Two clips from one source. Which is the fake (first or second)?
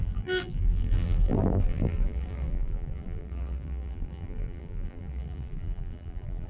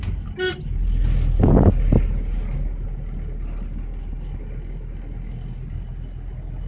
first